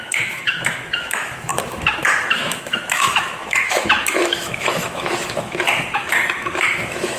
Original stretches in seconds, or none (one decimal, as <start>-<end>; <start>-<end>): none